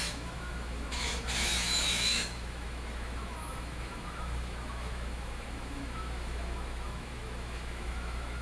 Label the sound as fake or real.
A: fake